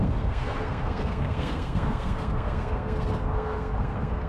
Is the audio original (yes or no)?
no